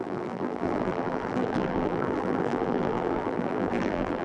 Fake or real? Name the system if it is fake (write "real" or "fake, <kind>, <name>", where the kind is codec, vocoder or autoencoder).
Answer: fake, vocoder, BigVGAN v2